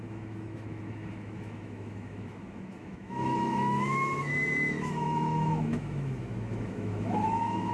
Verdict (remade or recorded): remade